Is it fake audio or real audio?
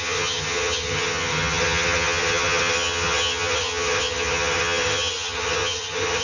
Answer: fake